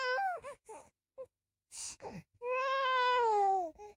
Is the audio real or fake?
fake